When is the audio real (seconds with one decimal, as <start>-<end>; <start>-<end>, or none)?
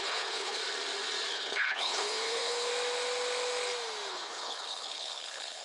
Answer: 0.6-1.3; 2.7-4.1